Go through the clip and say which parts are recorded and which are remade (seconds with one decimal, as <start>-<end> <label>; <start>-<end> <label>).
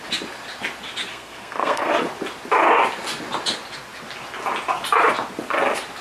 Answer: 0.0-1.1 recorded; 1.1-1.9 remade; 1.9-6.0 recorded